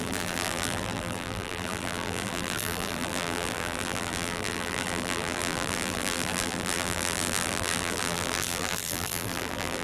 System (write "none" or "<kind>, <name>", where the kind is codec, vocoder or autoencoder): vocoder, BigVGAN v2